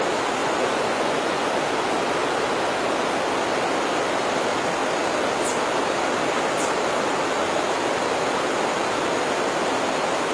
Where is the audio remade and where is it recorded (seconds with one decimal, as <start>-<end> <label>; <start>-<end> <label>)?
0.0-0.4 recorded; 0.4-1.5 remade; 1.5-10.3 recorded